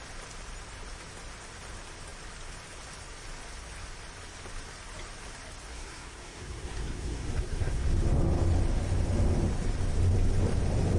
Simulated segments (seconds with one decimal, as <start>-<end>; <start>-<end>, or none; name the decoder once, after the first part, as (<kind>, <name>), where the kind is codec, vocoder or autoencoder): 5.7-7.8 (codec, SNAC)